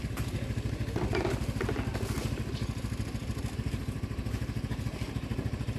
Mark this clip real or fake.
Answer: real